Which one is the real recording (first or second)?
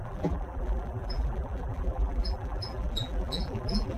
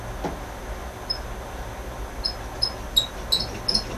second